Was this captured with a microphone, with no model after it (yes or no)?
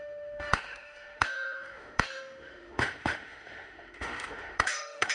no